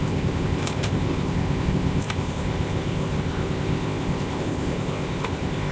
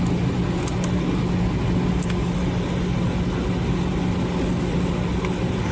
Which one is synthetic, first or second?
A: first